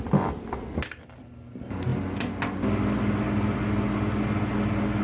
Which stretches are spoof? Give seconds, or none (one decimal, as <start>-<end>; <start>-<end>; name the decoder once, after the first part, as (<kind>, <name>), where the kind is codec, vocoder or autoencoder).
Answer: none